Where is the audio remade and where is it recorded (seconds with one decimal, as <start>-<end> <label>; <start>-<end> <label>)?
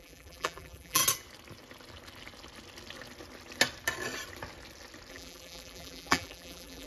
0.0-1.0 remade; 1.0-5.1 recorded; 5.1-6.9 remade